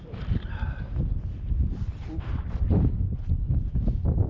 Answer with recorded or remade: recorded